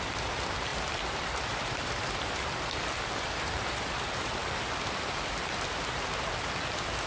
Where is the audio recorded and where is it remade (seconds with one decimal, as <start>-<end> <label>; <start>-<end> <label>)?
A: 0.0-0.7 recorded; 0.7-3.3 remade; 3.3-4.4 recorded; 4.4-5.8 remade; 5.8-7.1 recorded

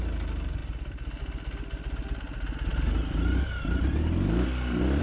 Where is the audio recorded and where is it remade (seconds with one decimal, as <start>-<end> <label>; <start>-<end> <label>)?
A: 0.0-5.0 recorded